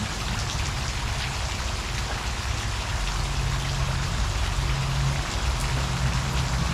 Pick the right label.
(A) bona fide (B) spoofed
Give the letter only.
A